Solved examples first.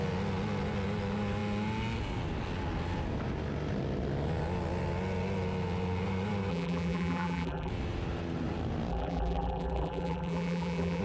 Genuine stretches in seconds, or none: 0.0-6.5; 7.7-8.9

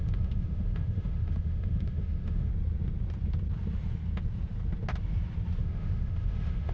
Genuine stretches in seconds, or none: 2.5-5.6

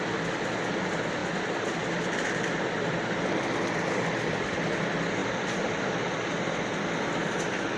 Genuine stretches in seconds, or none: 0.0-7.8

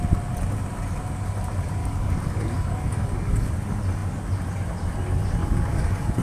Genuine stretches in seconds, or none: 0.0-1.8; 3.5-5.4

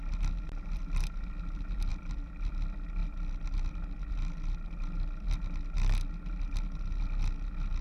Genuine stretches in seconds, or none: 0.0-7.8

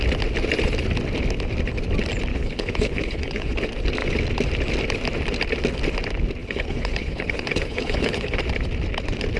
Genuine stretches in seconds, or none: 0.0-2.3; 3.6-6.4; 8.4-9.4